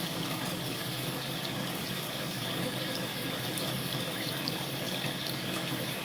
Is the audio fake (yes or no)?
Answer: yes